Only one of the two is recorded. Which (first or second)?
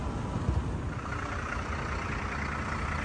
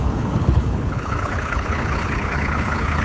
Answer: first